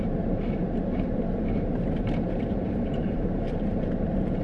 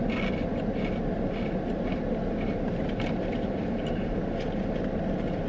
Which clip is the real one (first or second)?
second